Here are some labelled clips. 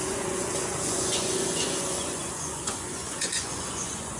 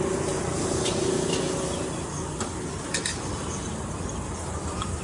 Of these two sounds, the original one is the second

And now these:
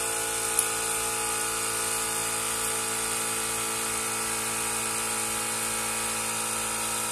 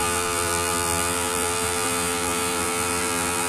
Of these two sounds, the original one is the first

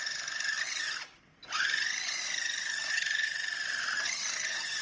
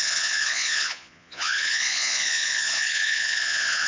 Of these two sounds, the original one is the first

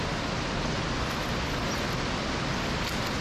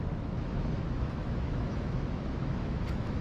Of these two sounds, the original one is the first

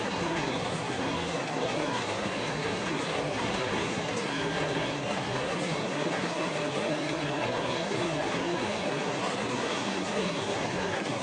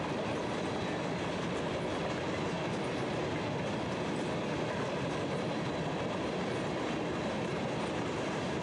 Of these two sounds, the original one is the second